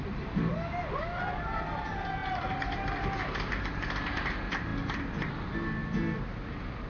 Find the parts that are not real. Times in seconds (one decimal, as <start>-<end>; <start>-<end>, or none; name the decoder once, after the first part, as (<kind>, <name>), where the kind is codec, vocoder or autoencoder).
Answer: none